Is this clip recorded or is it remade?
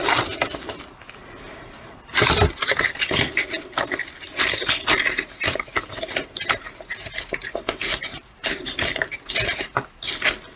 recorded